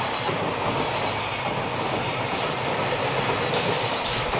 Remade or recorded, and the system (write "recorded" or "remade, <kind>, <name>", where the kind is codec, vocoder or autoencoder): recorded